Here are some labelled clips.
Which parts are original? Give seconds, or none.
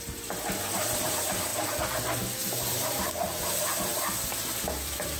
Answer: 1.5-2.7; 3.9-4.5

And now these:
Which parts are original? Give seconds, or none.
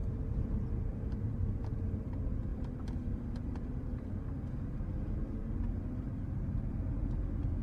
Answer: 2.1-7.6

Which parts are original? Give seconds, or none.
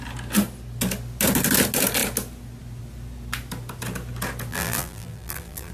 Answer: 0.0-4.5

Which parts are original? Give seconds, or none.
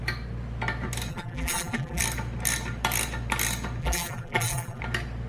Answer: 0.0-1.1; 2.0-3.8; 4.8-5.3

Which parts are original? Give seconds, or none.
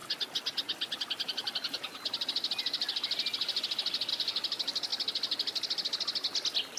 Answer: 0.0-6.8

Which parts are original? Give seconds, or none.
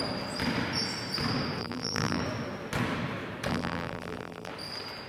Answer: 0.0-1.6; 2.2-3.5; 4.5-5.1